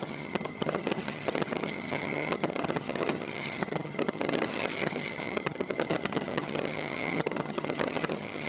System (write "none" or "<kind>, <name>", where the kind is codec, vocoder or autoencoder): vocoder, HiFi-GAN